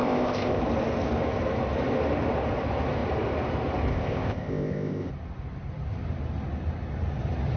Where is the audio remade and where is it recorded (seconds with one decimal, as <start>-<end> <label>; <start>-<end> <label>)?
0.0-0.6 remade; 0.6-3.9 recorded; 3.9-5.1 remade; 5.1-7.6 recorded